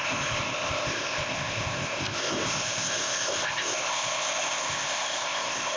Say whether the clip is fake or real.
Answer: fake